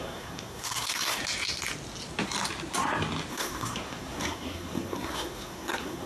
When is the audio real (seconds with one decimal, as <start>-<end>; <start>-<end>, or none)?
1.2-3.3